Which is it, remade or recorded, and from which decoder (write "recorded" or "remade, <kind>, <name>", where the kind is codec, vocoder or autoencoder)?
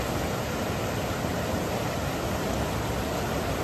recorded